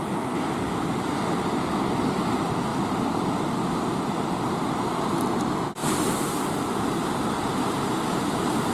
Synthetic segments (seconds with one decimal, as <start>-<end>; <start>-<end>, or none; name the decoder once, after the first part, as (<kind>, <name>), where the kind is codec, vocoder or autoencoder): 2.7-4.8 (vocoder, BigVGAN v2); 5.8-6.4